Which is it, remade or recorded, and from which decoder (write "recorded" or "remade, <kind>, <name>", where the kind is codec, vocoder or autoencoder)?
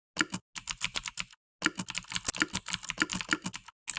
recorded